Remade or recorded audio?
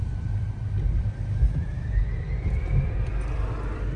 recorded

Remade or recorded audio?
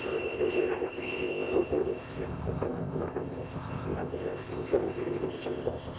remade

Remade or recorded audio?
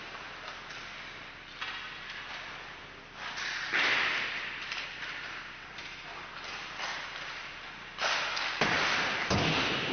recorded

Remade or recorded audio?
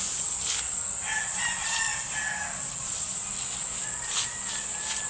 recorded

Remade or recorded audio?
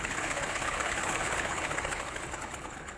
remade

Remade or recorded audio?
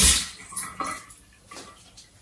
recorded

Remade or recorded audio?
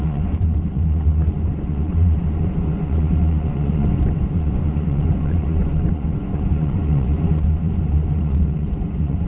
remade